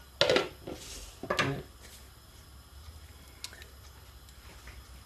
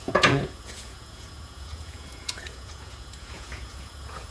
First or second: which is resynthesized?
second